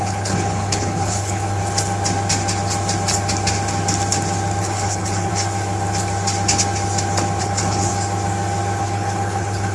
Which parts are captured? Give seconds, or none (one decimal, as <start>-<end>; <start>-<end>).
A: 1.6-4.6; 5.3-7.4; 7.9-8.8